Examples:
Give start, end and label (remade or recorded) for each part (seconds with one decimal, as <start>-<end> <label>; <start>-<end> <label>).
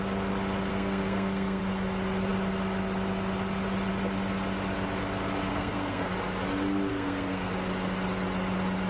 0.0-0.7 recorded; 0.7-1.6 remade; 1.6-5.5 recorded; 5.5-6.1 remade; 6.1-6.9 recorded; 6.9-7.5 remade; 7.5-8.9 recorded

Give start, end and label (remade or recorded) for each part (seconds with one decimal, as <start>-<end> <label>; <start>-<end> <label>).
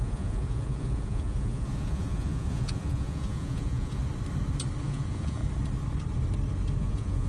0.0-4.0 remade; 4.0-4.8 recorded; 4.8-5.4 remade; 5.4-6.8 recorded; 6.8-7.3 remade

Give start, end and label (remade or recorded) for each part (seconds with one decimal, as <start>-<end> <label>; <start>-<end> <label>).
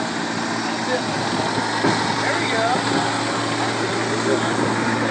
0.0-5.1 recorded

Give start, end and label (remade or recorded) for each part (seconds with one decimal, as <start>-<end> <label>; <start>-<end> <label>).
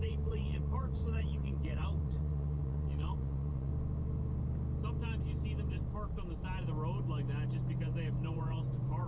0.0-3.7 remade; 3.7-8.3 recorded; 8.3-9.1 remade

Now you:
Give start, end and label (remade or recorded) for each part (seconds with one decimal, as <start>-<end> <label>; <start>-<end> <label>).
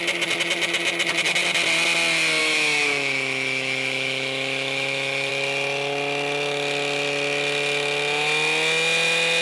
0.0-2.4 recorded; 2.4-5.3 remade; 5.3-9.4 recorded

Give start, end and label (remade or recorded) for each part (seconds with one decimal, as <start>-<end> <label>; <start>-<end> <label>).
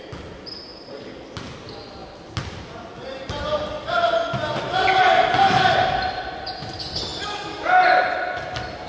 0.0-8.9 recorded